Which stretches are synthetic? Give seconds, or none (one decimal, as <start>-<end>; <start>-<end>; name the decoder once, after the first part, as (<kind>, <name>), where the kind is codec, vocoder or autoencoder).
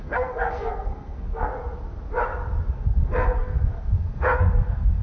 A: 0.0-1.5 (codec, SNAC); 2.7-5.0